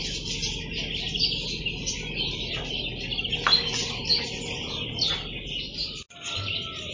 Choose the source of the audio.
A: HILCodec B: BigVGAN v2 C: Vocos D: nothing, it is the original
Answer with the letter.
D